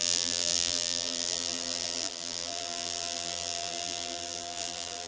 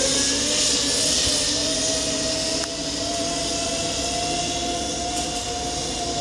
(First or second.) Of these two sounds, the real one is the second